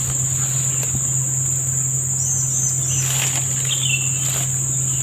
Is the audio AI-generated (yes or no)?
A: no